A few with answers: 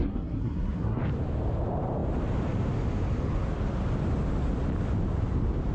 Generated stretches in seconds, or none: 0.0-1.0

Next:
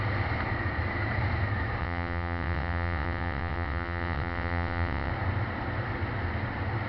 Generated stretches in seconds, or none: 1.8-5.1

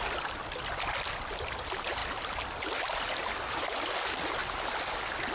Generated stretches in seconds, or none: none

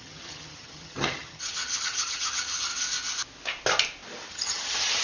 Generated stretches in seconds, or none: 0.0-2.7; 4.3-5.0

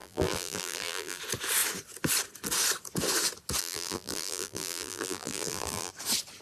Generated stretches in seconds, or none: 0.0-1.2; 3.6-5.9